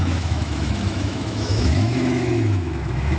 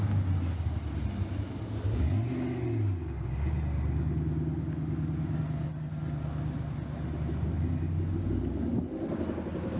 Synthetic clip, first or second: first